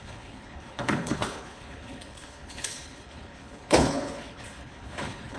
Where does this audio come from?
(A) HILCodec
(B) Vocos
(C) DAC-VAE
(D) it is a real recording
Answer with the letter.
A